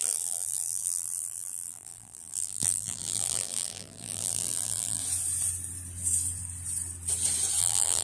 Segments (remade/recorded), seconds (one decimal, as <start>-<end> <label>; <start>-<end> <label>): 0.0-5.0 remade; 5.0-7.6 recorded; 7.6-8.0 remade